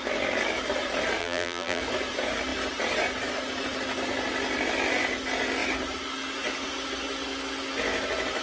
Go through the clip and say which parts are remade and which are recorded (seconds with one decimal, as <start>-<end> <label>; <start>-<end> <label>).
0.0-1.2 recorded; 1.2-1.8 remade; 1.8-8.4 recorded